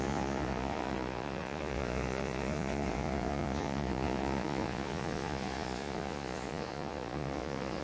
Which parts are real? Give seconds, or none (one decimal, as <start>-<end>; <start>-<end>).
none